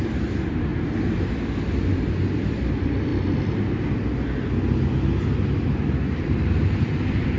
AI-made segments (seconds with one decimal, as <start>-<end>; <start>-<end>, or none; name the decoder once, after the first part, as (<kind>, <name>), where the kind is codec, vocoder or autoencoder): 0.0-0.7 (vocoder, BigVGAN v2); 1.9-3.1; 5.5-7.4